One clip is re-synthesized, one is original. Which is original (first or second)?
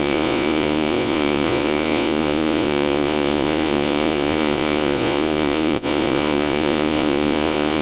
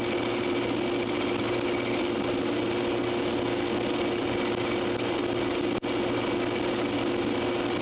second